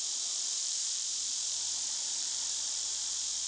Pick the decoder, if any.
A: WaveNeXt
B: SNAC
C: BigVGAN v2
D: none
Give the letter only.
C